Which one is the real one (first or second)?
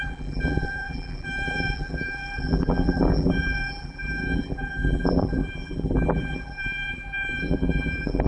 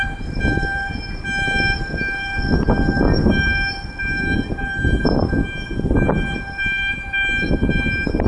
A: second